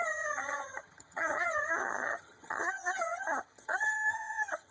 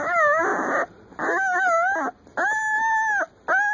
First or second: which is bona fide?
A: second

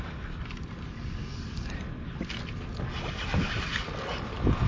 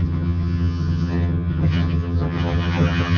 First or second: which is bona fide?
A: first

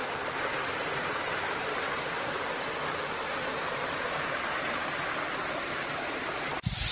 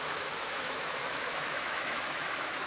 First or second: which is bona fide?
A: first